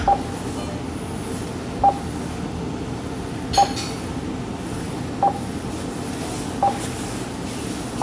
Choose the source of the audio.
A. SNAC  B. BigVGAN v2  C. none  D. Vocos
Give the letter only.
C